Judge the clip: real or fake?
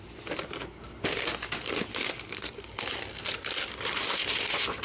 real